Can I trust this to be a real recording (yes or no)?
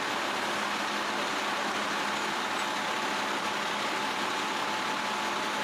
yes